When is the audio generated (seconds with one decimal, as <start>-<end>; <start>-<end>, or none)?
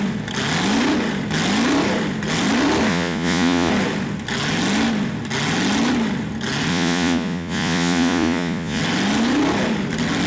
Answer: 2.9-3.7; 6.7-8.8